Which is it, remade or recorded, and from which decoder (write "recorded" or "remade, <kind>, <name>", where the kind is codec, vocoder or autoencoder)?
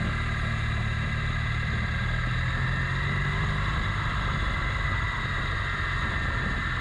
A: recorded